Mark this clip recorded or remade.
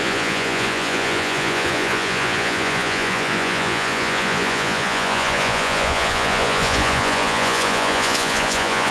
remade